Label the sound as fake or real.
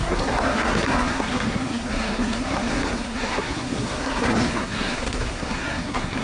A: fake